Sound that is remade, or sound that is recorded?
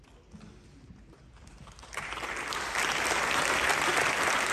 recorded